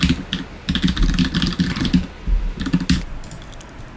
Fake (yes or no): no